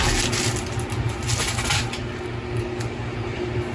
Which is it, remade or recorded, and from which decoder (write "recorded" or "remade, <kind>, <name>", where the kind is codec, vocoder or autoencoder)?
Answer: recorded